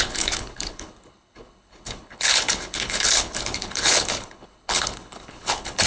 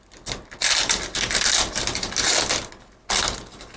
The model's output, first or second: first